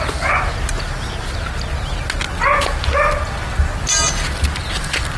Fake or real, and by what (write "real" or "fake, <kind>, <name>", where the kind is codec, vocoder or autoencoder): real